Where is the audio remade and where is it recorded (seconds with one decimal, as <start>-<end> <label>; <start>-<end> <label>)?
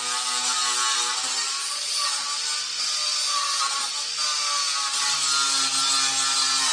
0.0-1.6 recorded; 1.6-2.2 remade; 2.2-3.2 recorded; 3.2-3.9 remade; 3.9-6.7 recorded